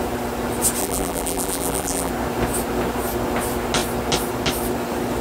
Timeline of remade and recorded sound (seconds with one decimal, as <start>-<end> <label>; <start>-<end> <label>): 0.0-0.8 recorded; 0.8-2.1 remade; 2.1-5.2 recorded